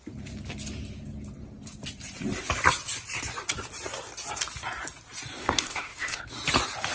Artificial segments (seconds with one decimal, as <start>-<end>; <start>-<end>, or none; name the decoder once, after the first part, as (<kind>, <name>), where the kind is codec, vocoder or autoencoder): 5.4-6.2 (autoencoder, DAC-VAE)